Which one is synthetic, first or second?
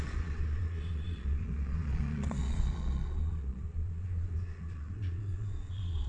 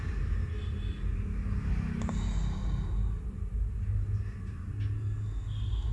first